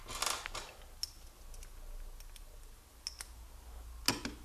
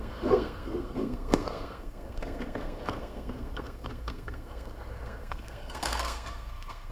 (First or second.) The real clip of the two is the first